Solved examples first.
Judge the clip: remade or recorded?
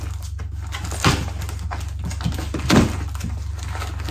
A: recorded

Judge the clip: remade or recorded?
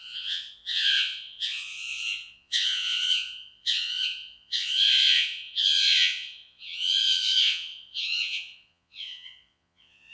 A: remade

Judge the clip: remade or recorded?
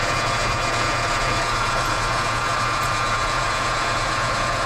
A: remade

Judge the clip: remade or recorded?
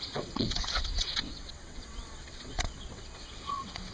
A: remade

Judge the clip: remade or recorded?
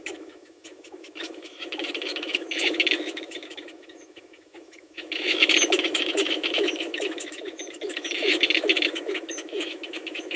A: remade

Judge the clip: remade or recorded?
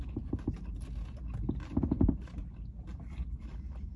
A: recorded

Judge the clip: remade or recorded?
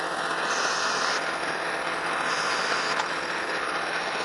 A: recorded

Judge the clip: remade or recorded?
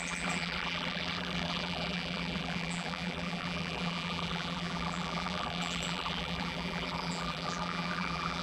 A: remade